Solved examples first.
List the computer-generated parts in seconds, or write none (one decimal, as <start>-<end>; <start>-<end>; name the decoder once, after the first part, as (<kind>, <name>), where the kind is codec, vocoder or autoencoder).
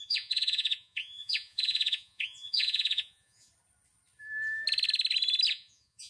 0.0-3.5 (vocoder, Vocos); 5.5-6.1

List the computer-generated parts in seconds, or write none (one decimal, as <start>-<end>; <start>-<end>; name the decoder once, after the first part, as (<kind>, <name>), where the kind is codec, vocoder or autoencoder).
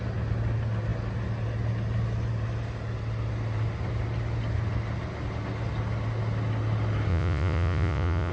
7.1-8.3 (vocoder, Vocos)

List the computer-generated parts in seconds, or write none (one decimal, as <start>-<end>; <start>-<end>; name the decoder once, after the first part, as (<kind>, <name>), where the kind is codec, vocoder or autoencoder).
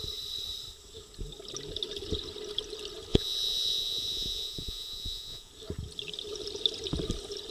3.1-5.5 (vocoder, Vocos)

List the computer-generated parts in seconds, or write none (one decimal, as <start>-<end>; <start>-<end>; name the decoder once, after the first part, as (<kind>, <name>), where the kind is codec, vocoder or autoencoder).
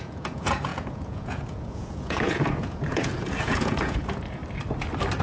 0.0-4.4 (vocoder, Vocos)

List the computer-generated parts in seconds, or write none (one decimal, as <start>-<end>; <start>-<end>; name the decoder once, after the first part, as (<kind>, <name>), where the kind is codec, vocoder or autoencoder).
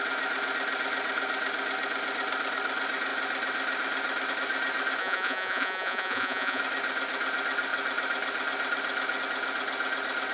5.0-6.6 (vocoder, Vocos)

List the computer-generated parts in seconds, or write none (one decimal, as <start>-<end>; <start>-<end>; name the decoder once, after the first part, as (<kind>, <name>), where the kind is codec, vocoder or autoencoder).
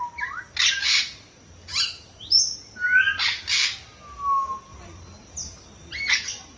none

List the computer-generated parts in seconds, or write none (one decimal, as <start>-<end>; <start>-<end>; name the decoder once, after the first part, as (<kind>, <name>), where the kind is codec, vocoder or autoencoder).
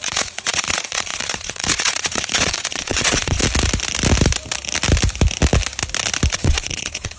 0.0-3.4 (vocoder, Vocos); 6.3-7.2